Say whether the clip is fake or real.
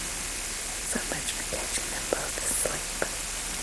fake